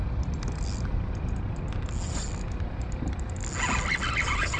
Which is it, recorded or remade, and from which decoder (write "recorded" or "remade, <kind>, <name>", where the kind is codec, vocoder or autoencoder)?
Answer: recorded